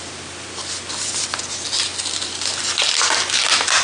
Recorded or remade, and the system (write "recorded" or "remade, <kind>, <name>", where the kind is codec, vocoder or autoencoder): recorded